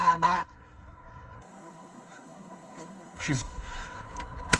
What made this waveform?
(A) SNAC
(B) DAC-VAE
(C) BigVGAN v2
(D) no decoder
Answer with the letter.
A